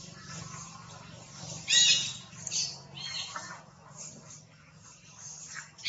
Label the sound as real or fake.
real